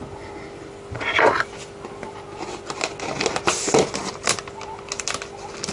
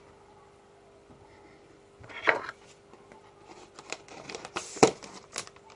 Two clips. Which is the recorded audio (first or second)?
first